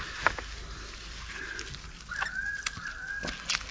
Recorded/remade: recorded